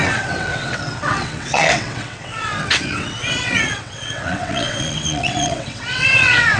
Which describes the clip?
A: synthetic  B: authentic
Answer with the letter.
A